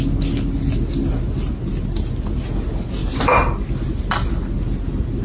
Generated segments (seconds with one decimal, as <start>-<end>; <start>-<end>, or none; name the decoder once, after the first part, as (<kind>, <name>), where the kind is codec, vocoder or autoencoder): none